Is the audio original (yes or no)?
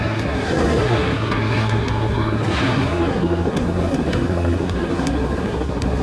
no